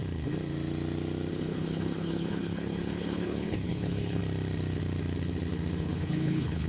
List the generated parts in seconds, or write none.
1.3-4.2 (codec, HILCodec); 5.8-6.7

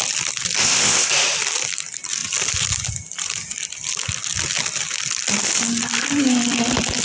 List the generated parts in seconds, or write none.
0.6-1.1 (codec, ZipCodec)

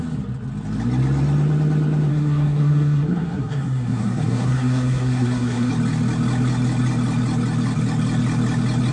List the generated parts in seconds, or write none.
2.1-5.7 (codec, SNAC)

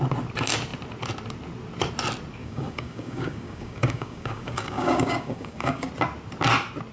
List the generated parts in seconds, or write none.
2.4-5.9 (codec, DAC)

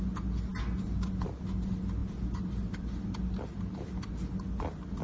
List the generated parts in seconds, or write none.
none

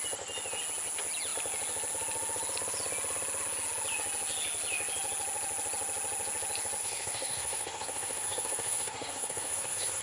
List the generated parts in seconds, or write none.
6.8-10.0 (codec, SNAC)

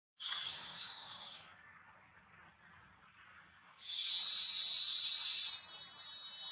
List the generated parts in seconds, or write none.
0.0-1.9 (codec, DAC); 3.3-4.1